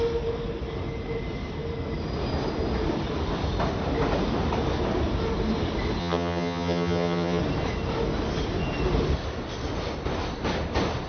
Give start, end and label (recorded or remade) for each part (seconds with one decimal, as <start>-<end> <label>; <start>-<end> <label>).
0.0-6.0 recorded; 6.0-7.4 remade; 7.4-11.1 recorded